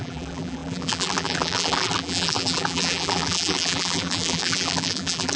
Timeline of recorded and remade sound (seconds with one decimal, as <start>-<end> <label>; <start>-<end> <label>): 0.0-5.4 remade